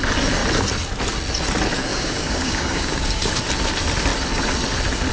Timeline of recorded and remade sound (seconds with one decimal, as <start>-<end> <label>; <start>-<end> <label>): 0.0-1.9 recorded; 1.9-3.3 remade; 3.3-5.1 recorded

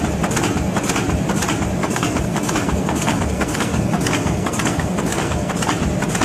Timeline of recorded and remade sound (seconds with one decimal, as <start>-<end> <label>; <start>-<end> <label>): 0.0-1.8 recorded; 1.8-5.5 remade; 5.5-6.2 recorded